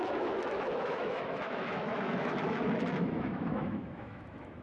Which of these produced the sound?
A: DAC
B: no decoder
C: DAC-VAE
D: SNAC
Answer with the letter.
C